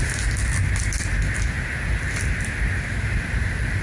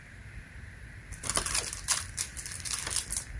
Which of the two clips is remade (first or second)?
second